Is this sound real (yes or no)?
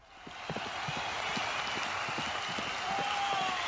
yes